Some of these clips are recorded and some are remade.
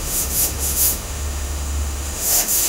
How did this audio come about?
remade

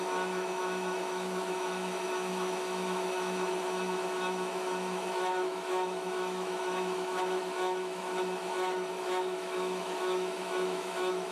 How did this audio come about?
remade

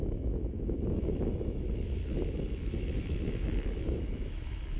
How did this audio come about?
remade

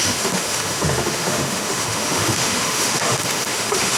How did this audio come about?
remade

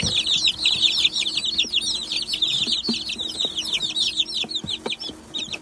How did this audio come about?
recorded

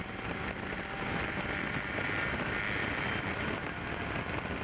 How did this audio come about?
recorded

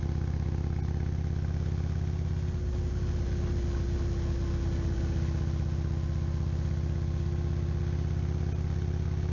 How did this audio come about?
recorded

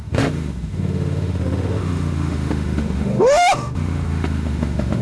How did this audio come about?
remade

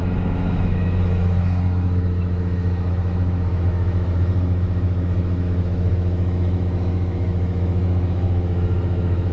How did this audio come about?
remade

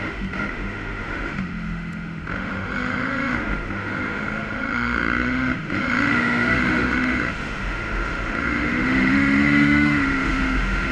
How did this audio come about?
remade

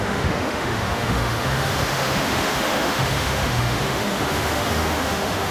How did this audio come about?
remade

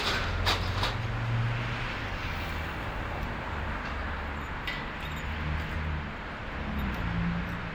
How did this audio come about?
recorded